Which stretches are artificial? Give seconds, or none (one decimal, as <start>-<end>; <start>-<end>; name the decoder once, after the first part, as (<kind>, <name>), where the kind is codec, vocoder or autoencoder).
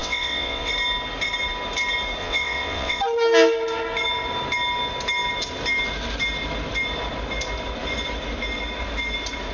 0.0-0.7 (vocoder, WaveNeXt); 2.2-3.0